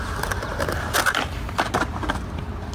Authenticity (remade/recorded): recorded